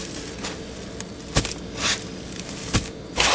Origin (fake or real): real